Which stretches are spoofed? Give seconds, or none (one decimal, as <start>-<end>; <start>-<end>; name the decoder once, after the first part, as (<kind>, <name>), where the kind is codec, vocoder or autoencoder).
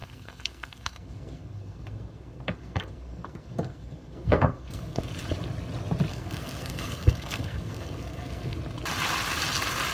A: 0.0-5.0 (codec, SNAC); 6.1-8.6